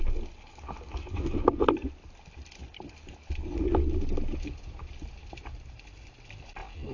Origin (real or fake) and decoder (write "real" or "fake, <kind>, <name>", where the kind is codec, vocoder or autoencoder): real